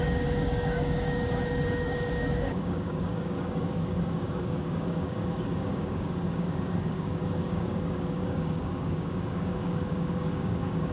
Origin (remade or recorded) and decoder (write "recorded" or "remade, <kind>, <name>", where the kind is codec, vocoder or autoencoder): remade, codec, DAC